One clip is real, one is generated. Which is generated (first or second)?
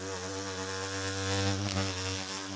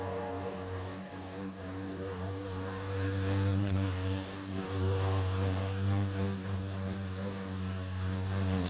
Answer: second